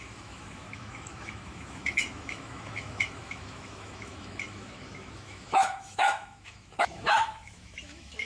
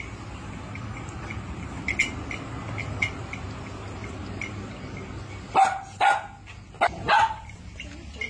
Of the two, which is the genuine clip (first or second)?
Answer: second